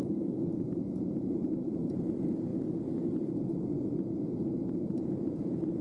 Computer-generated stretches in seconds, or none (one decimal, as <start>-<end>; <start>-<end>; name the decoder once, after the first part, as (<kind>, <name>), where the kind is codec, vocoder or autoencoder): 0.0-2.5 (vocoder, BigVGAN v2); 4.7-5.8